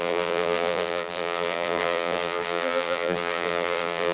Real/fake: fake